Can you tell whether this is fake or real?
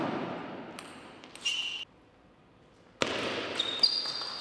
real